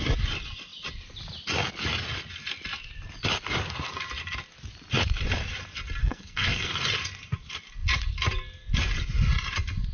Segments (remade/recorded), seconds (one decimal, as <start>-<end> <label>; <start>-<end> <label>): 0.0-6.0 recorded; 6.0-6.7 remade; 6.7-9.9 recorded